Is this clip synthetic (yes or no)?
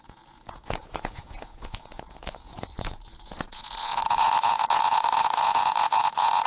yes